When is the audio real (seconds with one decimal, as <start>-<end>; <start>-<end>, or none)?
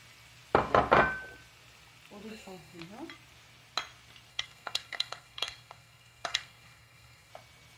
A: 0.0-2.3; 2.8-4.3; 7.3-7.8